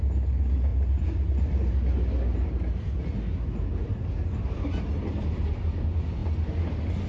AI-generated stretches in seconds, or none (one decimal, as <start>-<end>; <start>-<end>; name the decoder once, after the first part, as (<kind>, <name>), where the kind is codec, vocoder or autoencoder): 0.7-1.7 (vocoder, BigVGAN v2)